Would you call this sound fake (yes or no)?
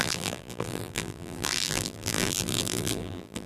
yes